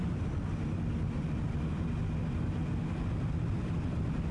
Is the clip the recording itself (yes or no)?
yes